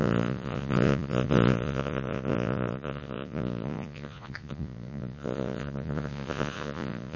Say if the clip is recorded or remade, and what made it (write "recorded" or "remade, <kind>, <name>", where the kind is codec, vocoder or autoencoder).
remade, vocoder, Vocos